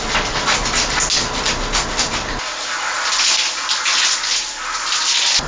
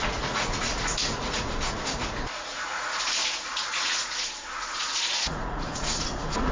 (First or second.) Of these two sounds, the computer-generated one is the second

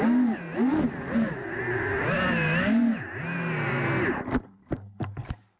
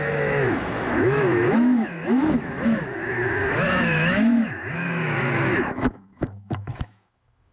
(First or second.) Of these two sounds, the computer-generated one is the second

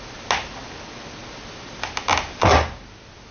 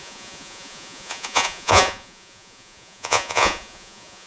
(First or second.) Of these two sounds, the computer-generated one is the second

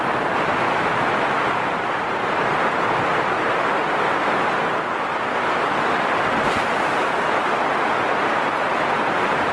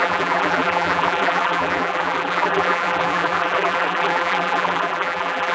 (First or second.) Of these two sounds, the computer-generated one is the second